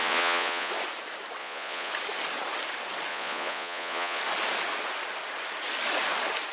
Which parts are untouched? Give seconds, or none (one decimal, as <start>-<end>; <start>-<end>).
0.7-1.4; 1.9-3.1; 4.2-6.5